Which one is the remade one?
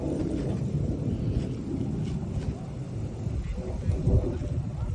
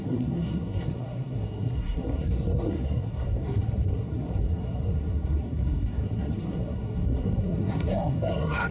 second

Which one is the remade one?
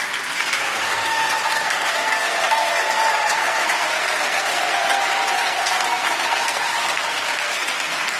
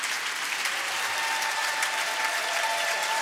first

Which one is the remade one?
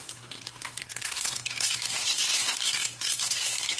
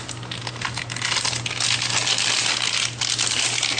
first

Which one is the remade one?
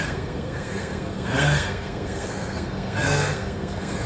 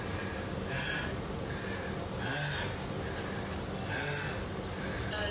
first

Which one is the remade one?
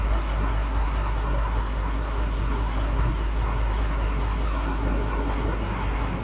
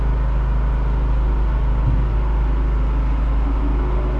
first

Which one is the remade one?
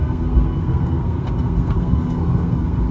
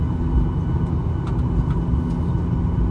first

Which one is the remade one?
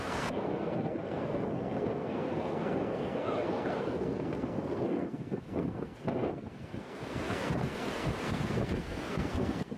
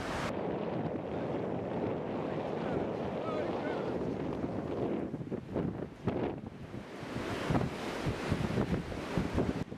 first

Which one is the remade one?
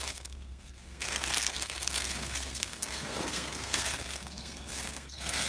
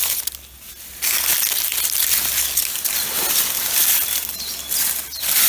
first